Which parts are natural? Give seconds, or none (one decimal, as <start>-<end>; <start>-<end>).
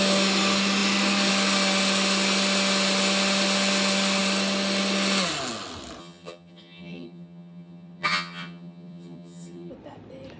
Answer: 0.0-6.0; 9.7-10.4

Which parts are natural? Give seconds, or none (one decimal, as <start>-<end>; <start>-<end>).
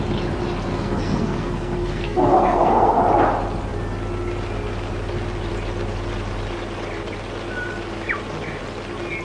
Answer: 0.0-0.7; 3.0-9.2